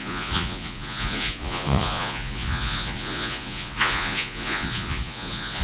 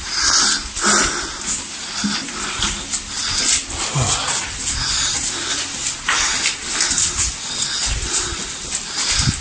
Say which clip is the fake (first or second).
first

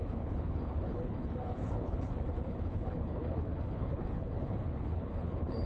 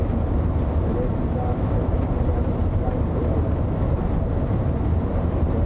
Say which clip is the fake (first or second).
first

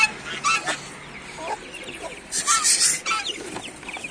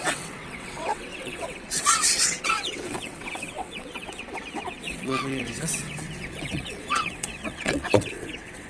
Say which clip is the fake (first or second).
second